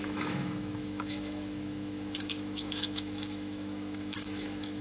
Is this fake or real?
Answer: fake